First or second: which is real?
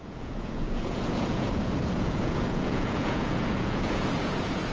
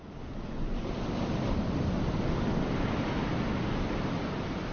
second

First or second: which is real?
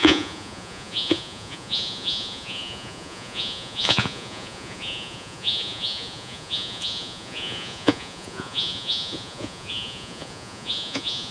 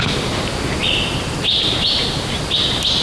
second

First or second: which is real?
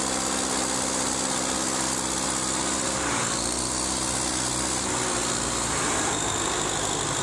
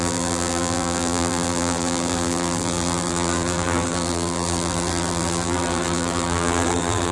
first